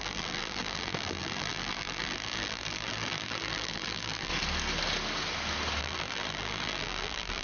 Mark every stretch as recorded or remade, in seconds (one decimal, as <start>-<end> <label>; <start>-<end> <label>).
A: 0.0-4.3 remade; 4.3-5.8 recorded; 5.8-7.4 remade